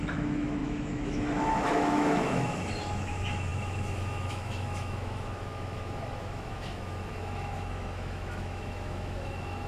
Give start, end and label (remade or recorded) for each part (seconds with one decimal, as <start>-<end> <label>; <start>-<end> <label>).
0.0-9.7 remade